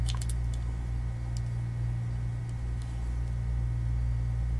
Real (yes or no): yes